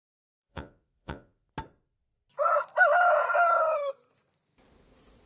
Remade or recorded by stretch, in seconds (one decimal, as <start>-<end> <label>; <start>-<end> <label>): 0.0-0.4 recorded; 0.4-1.5 remade; 1.5-5.3 recorded